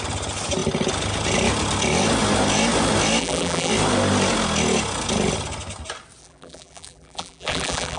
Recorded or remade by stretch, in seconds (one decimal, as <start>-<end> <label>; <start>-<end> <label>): 0.0-3.2 recorded; 3.2-3.7 remade; 3.7-6.2 recorded; 6.2-8.0 remade